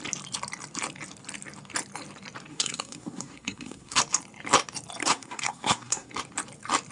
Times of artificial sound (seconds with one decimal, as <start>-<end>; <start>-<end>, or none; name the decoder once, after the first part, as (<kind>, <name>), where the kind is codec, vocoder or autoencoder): 2.5-4.0 (codec, SNAC); 5.0-6.1